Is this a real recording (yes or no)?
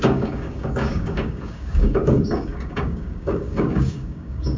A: no